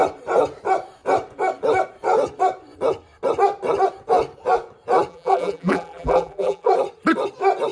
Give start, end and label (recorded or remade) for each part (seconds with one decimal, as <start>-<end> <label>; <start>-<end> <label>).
0.0-5.1 recorded; 5.1-6.7 remade; 6.7-7.7 recorded